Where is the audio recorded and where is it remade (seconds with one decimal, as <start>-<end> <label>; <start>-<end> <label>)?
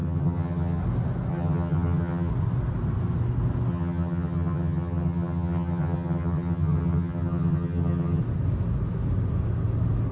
0.0-0.8 remade; 0.8-1.3 recorded; 1.3-2.3 remade; 2.3-3.7 recorded; 3.7-8.2 remade; 8.2-10.1 recorded